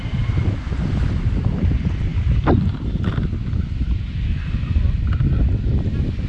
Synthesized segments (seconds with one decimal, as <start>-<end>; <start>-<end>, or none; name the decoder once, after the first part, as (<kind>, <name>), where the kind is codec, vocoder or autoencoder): none